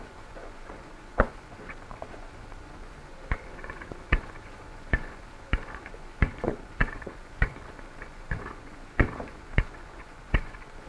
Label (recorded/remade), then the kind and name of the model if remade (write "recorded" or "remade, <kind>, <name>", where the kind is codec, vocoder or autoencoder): remade, vocoder, Vocos